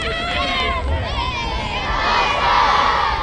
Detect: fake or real real